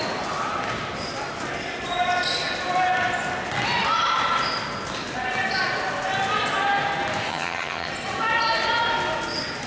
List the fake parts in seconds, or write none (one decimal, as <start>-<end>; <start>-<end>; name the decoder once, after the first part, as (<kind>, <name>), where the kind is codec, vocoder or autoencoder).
7.3-7.9 (vocoder, HiFi-GAN)